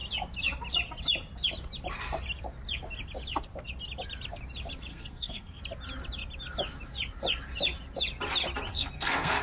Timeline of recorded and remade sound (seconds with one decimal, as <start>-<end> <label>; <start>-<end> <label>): 0.0-4.9 recorded; 4.9-5.6 remade; 5.6-8.7 recorded; 8.7-9.4 remade